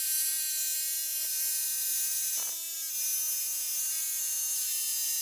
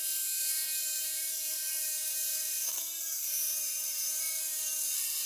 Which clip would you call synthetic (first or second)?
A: second